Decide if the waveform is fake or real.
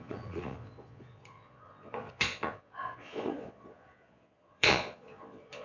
fake